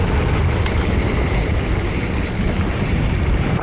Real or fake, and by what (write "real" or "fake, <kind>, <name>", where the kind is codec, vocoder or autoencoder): fake, vocoder, BigVGAN v2